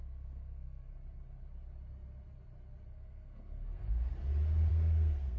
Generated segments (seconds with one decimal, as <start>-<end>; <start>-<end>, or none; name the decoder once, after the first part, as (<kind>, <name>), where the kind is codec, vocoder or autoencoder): 0.0-0.9 (codec, SNAC); 2.9-4.1; 4.7-5.4